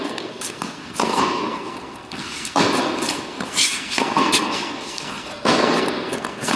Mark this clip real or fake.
fake